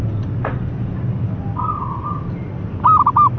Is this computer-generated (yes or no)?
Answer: no